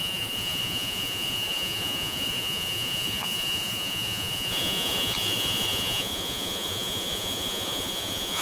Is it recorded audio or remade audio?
remade